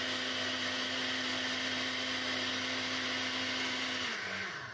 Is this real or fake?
real